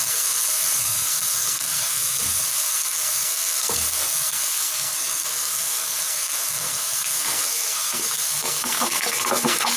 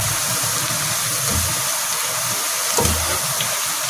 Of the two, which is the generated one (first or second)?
first